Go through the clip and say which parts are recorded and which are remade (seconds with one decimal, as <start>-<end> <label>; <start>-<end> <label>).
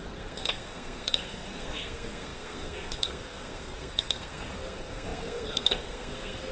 0.0-6.5 remade